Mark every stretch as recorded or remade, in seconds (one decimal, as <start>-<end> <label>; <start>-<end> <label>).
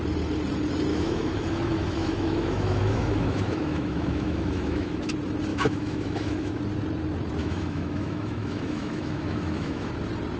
0.0-0.9 recorded; 0.9-5.1 remade; 5.1-5.5 recorded; 5.5-6.6 remade; 6.6-7.4 recorded; 7.4-9.9 remade; 9.9-10.4 recorded